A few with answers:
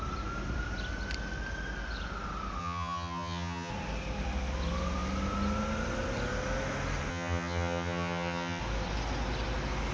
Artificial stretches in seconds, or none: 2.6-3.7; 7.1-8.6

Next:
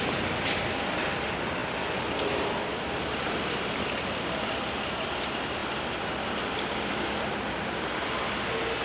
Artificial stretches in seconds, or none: none

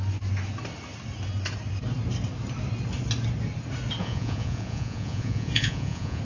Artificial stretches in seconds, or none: 4.0-6.2

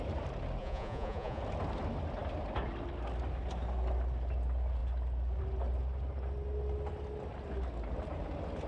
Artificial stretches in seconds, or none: 0.6-1.4

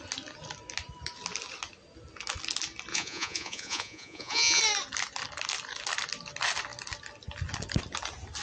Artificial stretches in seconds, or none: 2.9-4.6